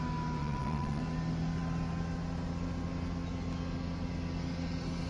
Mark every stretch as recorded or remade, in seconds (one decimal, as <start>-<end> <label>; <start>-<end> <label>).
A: 0.0-0.4 recorded; 0.4-1.0 remade; 1.0-5.1 recorded